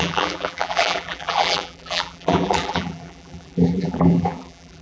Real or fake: fake